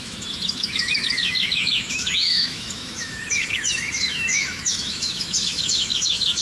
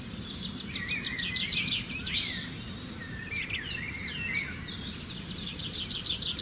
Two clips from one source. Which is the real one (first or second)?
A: second